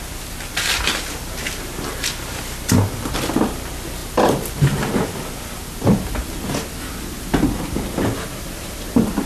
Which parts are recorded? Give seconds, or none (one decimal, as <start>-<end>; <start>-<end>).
none